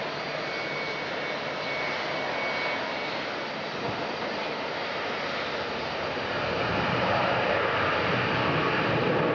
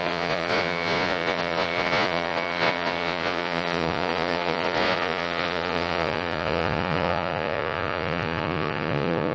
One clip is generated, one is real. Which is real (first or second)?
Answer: first